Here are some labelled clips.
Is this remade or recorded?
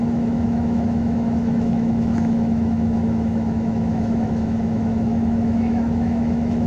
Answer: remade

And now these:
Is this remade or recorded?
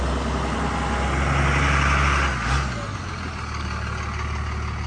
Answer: recorded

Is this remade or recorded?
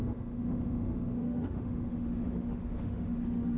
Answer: remade